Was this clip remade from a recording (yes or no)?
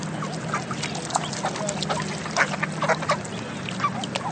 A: no